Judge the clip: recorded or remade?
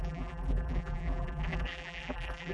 remade